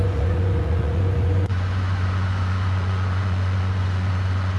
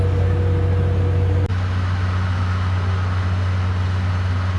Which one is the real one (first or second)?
second